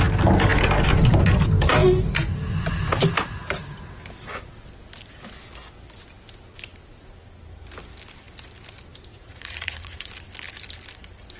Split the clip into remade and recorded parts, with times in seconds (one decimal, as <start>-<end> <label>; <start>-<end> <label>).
0.0-9.1 recorded; 9.1-10.1 remade; 10.1-11.4 recorded